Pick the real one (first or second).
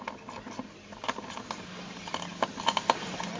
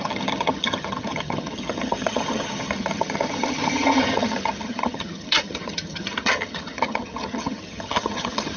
first